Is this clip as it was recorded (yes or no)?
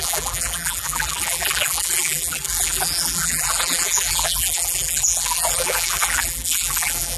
no